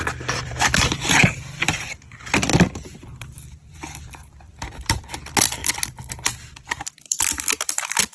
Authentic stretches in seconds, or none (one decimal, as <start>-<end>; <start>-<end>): 5.6-6.9